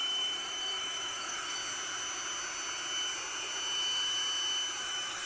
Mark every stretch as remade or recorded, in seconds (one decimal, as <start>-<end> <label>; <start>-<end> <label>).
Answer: 0.0-1.6 remade; 1.6-4.8 recorded; 4.8-5.3 remade